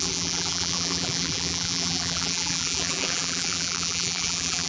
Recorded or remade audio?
remade